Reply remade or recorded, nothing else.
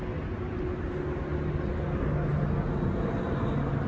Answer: recorded